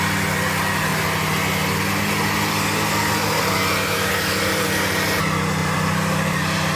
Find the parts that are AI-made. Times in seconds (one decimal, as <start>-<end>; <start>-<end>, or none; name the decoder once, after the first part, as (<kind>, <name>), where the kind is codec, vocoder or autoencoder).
5.6-6.8 (vocoder, BigVGAN v2)